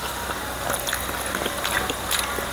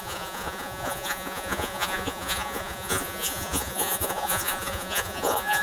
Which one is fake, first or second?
second